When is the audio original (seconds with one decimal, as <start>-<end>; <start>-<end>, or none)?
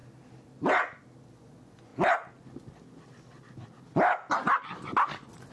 0.0-1.3; 1.9-5.5